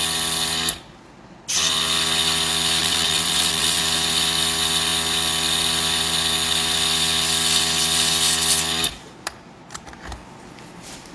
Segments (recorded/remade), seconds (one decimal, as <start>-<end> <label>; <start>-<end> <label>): 0.0-2.8 recorded; 2.8-3.8 remade; 3.8-11.1 recorded